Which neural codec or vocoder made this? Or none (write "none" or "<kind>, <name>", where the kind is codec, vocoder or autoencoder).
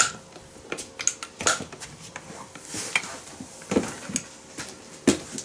none